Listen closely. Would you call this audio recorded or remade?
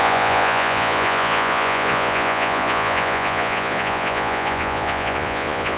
remade